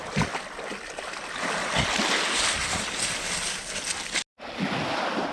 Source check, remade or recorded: recorded